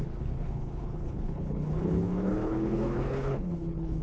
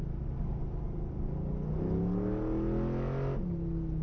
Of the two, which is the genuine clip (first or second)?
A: second